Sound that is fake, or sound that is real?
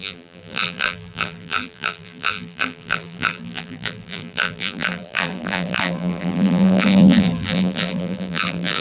fake